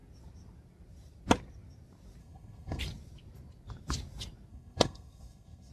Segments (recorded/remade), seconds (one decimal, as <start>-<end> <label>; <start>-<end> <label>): 0.0-2.2 recorded; 2.2-2.8 remade; 2.8-4.5 recorded; 4.5-5.7 remade